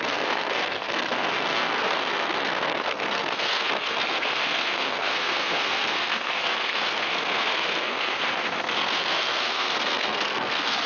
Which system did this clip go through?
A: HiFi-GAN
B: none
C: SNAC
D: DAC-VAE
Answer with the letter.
C